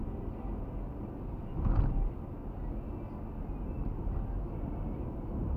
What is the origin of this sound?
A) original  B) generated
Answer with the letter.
A